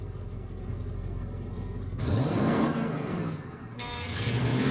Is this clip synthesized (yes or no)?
yes